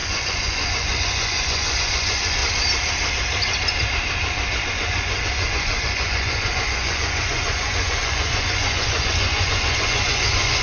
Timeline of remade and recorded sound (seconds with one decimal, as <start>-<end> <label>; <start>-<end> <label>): 0.0-2.4 remade; 2.4-4.7 recorded; 4.7-10.6 remade